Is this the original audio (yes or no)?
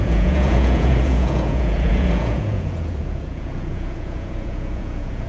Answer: no